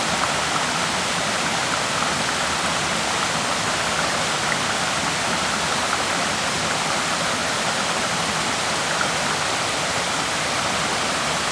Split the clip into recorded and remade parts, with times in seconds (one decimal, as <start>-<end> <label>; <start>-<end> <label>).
0.0-11.5 recorded